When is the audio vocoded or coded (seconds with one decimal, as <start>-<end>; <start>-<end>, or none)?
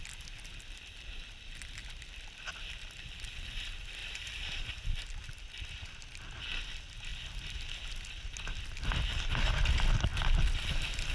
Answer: 0.5-3.6; 4.0-5.4